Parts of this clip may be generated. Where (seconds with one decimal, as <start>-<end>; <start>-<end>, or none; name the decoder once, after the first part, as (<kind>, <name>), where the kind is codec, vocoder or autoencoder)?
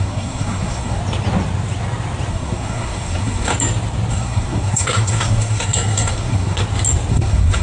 0.0-1.0 (codec, SNAC); 2.3-3.5; 4.1-6.6; 7.1-7.6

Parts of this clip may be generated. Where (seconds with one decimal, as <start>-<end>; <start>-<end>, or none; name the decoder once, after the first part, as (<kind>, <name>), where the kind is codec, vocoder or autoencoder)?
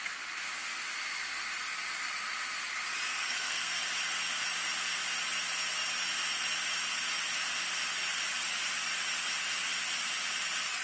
3.1-3.8 (codec, SNAC)